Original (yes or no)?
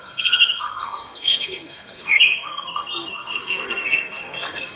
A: no